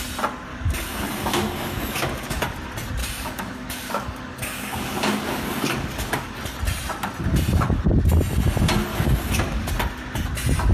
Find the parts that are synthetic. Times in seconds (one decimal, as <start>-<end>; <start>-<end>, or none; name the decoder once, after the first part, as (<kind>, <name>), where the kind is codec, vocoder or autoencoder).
0.5-2.4 (codec, DAC); 3.0-6.4; 8.9-9.7